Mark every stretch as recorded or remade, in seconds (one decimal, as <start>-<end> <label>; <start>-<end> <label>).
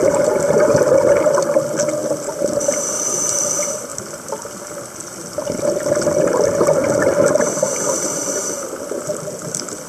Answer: 0.0-2.0 recorded; 2.0-3.4 remade; 3.4-3.9 recorded; 3.9-4.6 remade; 4.6-6.8 recorded; 6.8-8.9 remade; 8.9-9.9 recorded